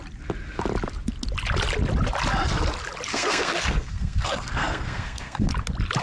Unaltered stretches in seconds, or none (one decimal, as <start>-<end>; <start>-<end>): 0.0-3.1; 5.5-6.0

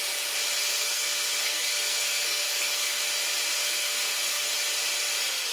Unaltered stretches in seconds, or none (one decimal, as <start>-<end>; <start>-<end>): 0.0-0.6; 3.0-3.5; 4.5-5.5

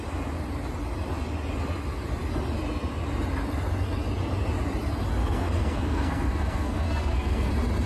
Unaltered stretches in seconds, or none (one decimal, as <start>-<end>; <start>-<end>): 0.0-5.2; 7.5-7.9

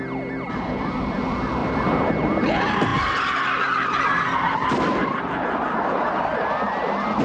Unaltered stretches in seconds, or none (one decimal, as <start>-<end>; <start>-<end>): 0.0-7.2

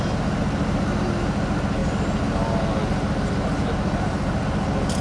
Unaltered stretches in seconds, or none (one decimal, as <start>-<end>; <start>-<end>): 0.0-5.0

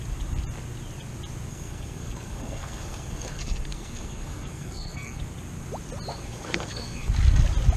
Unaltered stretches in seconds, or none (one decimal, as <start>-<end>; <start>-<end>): 0.0-1.5; 5.2-6.1; 7.1-7.8

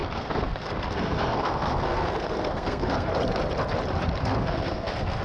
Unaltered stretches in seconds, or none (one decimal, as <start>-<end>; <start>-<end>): 3.1-4.2